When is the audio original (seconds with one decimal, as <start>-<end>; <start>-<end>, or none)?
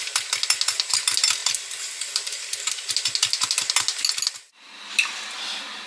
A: 0.0-5.9